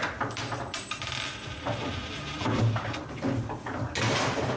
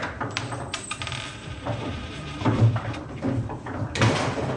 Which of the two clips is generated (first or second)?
second